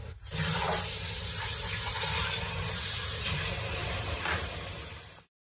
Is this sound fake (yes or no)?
yes